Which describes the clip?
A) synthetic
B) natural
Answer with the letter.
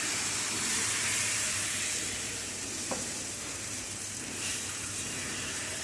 A